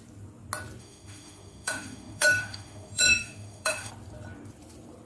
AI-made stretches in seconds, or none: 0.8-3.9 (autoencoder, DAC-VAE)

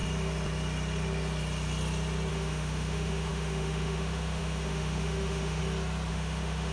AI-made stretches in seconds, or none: 2.3-5.6 (autoencoder, DAC-VAE); 6.1-6.7

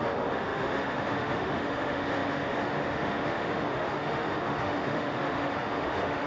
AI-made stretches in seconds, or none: 0.0-6.3 (autoencoder, DAC-VAE)

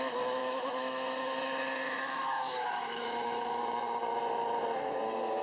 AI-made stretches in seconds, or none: 0.4-3.6 (autoencoder, DAC-VAE)

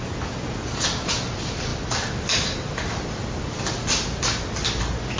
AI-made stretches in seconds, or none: none

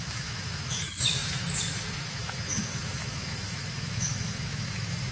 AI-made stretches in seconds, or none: 0.0-5.1 (autoencoder, DAC-VAE)